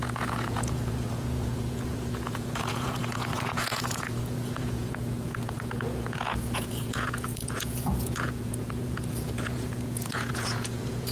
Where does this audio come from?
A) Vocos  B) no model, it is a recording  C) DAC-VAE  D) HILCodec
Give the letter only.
A